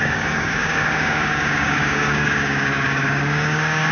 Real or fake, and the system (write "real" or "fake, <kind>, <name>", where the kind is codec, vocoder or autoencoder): fake, codec, DAC